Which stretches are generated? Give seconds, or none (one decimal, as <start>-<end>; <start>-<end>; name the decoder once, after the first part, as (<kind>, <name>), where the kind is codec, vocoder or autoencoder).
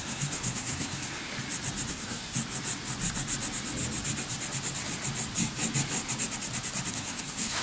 0.0-1.3 (codec, SNAC); 1.9-2.3; 6.9-7.6